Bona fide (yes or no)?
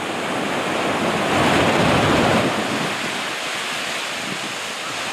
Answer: yes